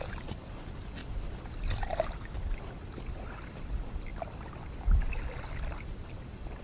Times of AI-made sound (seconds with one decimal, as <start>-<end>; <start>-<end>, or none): none